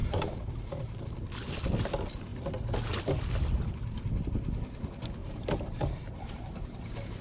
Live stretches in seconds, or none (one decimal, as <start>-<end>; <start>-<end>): 1.0-5.2